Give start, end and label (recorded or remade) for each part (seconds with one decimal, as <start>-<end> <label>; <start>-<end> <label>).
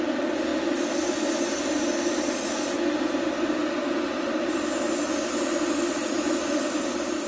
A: 0.0-7.3 recorded